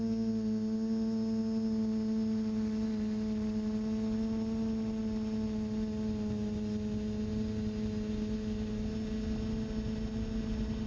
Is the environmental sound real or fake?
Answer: real